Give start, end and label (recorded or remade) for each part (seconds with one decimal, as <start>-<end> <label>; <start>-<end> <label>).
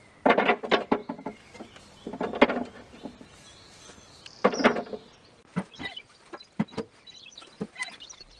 0.0-1.0 remade; 1.0-5.8 recorded; 5.8-8.4 remade